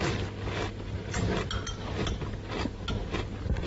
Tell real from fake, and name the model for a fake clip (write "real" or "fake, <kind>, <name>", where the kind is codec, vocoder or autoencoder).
real